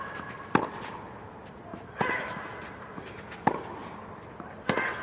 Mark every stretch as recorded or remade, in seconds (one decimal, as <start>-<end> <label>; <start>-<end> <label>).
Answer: 0.0-5.0 recorded